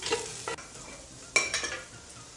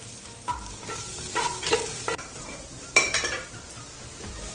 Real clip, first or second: first